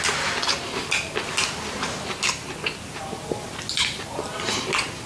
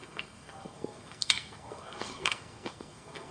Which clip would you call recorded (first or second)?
first